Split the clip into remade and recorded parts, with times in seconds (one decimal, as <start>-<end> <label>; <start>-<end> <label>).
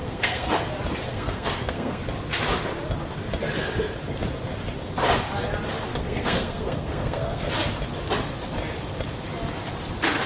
0.0-0.5 remade; 0.5-1.1 recorded; 1.1-2.0 remade; 2.0-5.9 recorded; 5.9-7.5 remade; 7.5-10.3 recorded